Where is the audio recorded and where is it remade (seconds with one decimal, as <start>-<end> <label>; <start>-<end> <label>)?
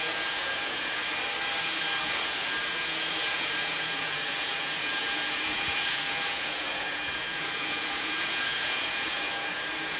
0.0-1.0 remade; 1.0-1.6 recorded; 1.6-10.0 remade